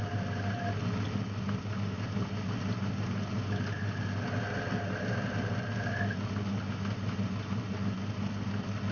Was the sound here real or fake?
real